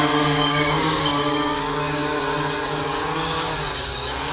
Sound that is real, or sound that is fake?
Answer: fake